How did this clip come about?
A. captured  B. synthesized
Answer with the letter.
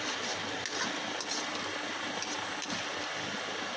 A